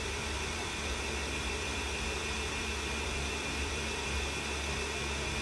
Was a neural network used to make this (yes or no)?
yes